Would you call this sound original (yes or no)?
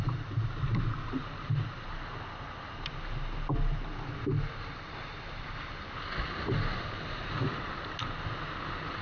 yes